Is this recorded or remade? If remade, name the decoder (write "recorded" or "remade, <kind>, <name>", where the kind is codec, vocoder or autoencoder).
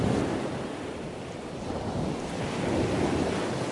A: recorded